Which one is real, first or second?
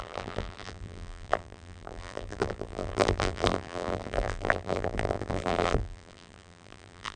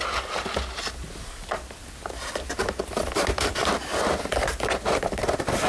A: second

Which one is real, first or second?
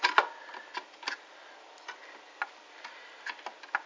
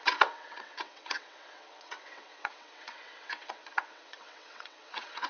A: first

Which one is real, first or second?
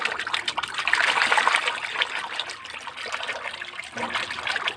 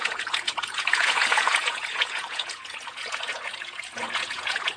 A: first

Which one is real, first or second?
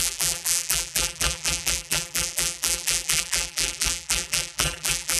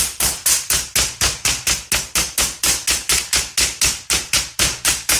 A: second